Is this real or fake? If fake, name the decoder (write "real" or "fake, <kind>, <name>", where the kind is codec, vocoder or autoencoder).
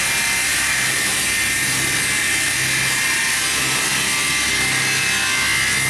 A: real